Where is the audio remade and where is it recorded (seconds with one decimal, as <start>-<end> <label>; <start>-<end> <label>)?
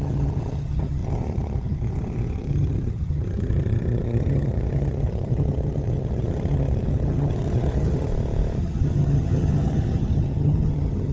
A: 0.0-8.1 remade; 8.1-8.6 recorded; 8.6-11.1 remade